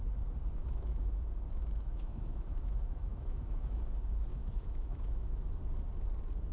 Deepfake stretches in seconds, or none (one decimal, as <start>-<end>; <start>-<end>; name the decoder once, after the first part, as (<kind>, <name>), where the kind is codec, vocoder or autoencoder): 0.6-1.2 (autoencoder, DAC-VAE); 1.6-3.8; 4.3-5.6